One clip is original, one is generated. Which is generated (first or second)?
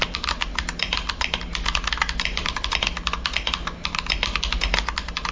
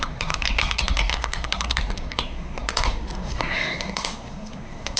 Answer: second